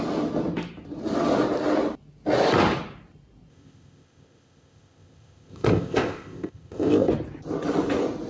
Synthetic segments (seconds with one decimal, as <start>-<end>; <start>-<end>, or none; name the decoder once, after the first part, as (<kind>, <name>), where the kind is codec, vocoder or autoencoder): 3.5-7.1 (codec, ZipCodec)